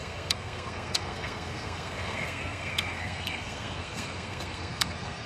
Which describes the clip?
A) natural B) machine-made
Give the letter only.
B